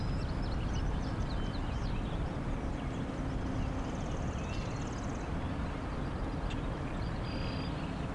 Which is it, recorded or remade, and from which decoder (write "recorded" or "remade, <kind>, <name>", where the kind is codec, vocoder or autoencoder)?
recorded